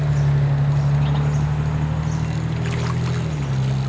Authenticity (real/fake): real